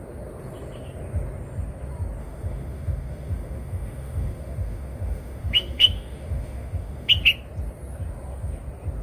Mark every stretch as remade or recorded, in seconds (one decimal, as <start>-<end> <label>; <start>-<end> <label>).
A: 0.0-2.2 recorded; 2.2-7.1 remade; 7.1-9.0 recorded